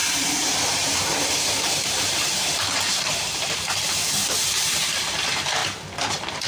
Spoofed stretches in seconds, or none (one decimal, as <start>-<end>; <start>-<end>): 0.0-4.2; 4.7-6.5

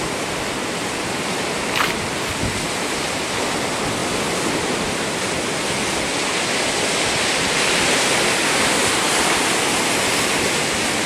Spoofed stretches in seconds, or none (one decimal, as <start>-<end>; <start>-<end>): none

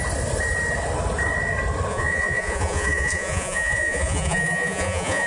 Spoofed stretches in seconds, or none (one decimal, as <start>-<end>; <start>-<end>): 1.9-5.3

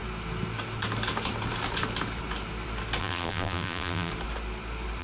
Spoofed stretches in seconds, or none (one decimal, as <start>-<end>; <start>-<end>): 3.0-4.1

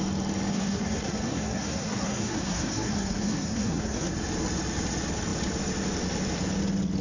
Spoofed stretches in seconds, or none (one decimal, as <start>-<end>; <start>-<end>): 0.5-4.1

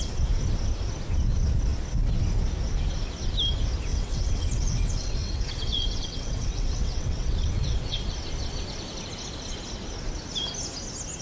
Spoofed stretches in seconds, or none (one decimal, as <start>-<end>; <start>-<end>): 3.9-8.1